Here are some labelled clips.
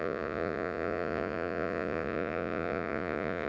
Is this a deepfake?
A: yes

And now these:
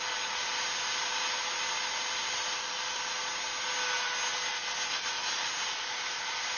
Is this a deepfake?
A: no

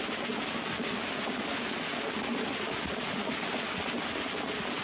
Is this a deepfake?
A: no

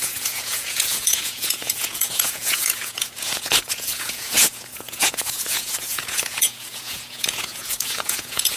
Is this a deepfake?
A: yes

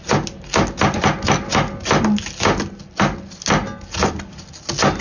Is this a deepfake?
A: no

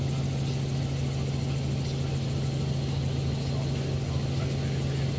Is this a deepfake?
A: no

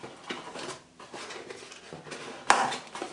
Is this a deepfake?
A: no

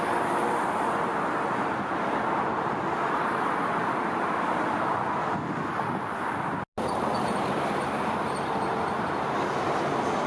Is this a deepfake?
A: no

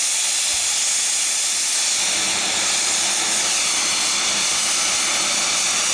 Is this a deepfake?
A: no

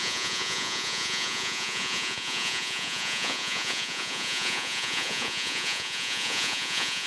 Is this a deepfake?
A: yes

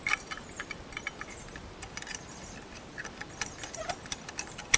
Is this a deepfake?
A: no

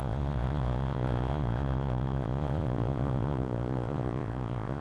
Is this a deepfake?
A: yes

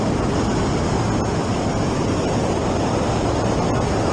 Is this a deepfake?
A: no